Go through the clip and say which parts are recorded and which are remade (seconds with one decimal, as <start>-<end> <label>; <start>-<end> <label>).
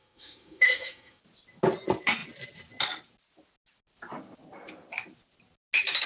0.0-1.2 remade; 1.2-6.1 recorded